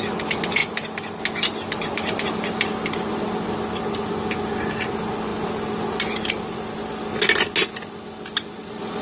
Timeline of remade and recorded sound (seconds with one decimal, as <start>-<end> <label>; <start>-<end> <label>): 0.0-9.0 recorded